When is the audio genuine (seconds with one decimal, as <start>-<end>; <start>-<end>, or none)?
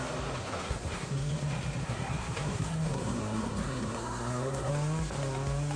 0.0-0.4; 1.3-1.8; 4.7-5.8